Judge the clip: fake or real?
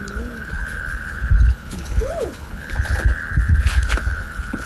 fake